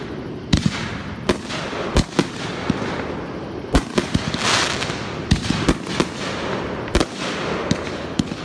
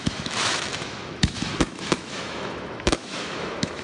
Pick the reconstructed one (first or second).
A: second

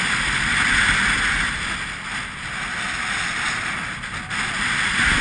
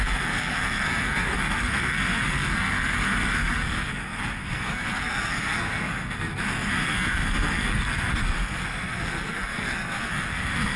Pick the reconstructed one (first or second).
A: second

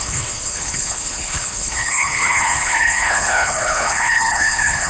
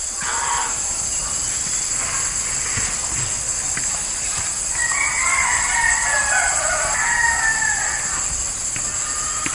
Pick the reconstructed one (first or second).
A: first